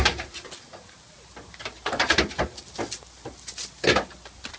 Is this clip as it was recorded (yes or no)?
yes